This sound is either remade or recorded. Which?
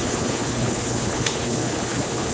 remade